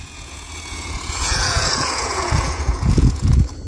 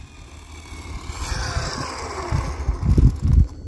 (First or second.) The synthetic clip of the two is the first